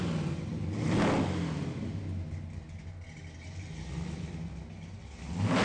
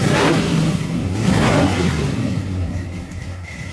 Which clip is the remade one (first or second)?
second